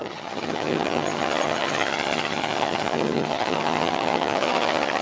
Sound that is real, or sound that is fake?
fake